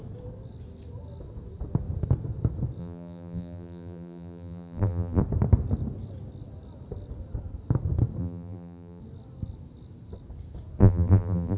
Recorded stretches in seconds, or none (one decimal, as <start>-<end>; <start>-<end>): 0.0-2.8; 5.2-8.2; 9.0-10.8